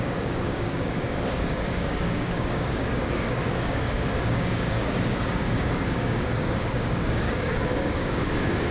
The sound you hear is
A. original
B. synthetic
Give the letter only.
B